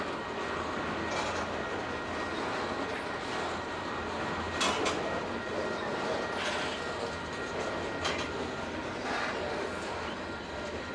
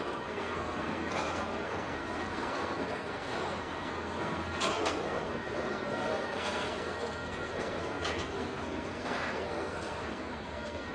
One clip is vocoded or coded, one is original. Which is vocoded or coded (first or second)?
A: second